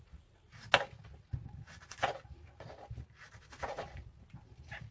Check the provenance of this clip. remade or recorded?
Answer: recorded